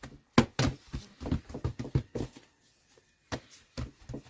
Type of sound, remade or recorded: recorded